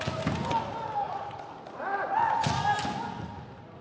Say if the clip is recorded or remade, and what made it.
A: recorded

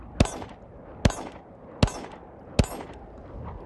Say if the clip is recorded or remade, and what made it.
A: recorded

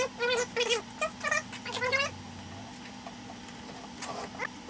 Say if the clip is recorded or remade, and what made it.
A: recorded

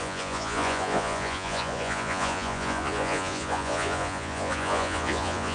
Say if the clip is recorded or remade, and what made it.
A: remade, vocoder, Vocos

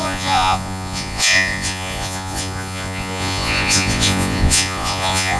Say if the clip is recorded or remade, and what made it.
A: remade, vocoder, Vocos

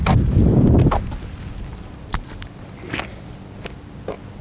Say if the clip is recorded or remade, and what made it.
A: recorded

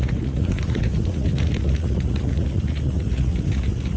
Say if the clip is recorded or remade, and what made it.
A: remade, vocoder, Vocos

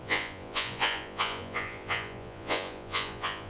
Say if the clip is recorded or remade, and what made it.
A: remade, vocoder, Vocos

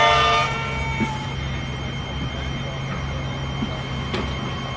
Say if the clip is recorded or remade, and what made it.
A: recorded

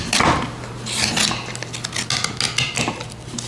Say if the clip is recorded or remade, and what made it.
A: recorded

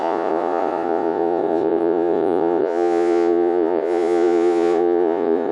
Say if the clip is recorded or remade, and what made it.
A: remade, vocoder, Vocos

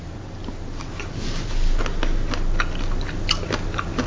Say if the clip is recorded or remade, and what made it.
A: recorded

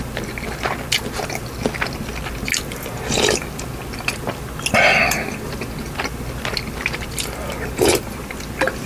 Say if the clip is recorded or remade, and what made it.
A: recorded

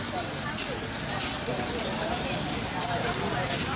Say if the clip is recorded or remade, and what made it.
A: recorded